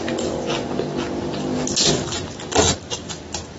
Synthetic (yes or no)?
no